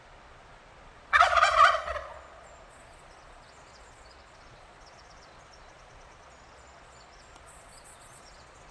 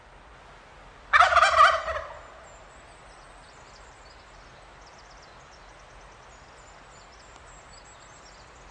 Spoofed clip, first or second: first